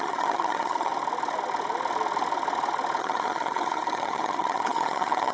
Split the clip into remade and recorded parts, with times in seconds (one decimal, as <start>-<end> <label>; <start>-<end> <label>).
0.0-0.9 remade; 0.9-3.0 recorded; 3.0-5.3 remade